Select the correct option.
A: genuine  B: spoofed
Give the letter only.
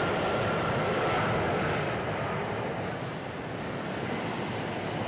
A